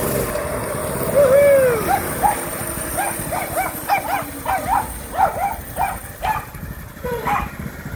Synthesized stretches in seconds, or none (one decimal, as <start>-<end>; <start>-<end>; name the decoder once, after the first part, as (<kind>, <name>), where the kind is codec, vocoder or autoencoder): none